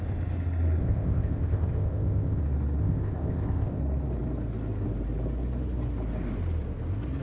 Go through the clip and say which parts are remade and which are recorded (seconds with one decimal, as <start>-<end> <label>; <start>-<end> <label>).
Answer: 0.0-0.8 recorded; 0.8-2.4 remade; 2.4-2.8 recorded; 2.8-3.8 remade; 3.8-7.2 recorded